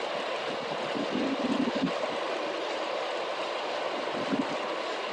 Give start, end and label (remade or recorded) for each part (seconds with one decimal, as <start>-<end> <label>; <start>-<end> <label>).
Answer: 0.0-5.1 recorded